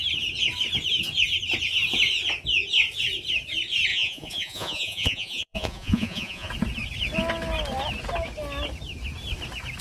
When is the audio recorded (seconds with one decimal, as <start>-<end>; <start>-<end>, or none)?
0.0-3.9; 6.5-9.8